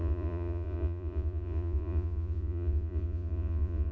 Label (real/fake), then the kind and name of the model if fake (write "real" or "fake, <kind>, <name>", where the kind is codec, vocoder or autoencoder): fake, vocoder, Vocos